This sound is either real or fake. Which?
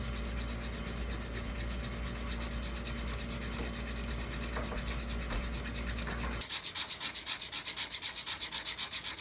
real